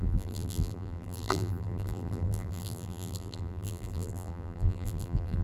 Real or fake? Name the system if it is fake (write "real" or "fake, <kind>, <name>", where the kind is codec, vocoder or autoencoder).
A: fake, vocoder, BigVGAN v2